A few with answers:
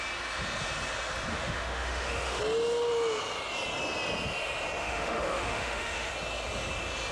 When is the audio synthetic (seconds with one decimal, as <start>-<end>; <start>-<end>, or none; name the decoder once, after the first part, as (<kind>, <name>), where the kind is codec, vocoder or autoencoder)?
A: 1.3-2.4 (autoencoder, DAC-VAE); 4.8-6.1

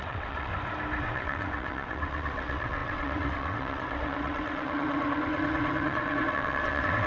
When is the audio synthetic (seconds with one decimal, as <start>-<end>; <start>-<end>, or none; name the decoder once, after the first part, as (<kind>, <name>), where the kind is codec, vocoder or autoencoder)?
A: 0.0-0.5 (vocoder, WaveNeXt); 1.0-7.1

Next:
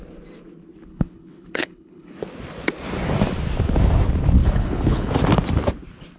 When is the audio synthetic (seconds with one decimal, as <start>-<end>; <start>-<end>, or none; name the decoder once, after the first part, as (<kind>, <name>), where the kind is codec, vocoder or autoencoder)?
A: 0.9-2.2 (codec, HILCodec); 4.4-5.1

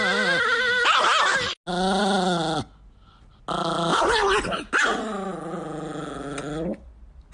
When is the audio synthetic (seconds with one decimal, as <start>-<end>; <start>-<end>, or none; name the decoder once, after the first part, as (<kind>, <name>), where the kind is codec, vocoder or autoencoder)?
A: none

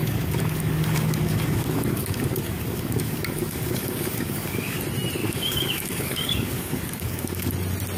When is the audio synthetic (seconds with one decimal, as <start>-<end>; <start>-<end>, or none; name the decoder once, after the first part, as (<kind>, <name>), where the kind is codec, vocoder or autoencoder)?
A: 0.0-4.8 (codec, DAC); 5.2-7.5

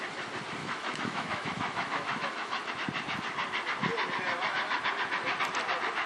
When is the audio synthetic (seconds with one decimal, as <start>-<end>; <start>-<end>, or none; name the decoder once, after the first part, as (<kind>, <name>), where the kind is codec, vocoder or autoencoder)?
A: 0.6-2.7 (autoencoder, DAC-VAE)

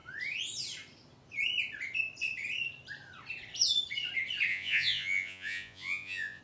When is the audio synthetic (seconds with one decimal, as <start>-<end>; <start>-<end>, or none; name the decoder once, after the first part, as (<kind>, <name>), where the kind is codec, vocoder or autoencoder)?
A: 4.5-6.4 (vocoder, Vocos)

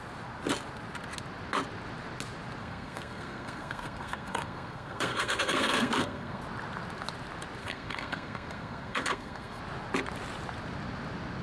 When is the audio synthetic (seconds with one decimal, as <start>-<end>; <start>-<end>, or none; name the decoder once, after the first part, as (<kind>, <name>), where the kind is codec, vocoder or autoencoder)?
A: 2.6-6.4 (codec, SNAC); 7.6-9.6